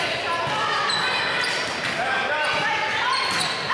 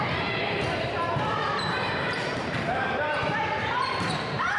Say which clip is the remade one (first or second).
second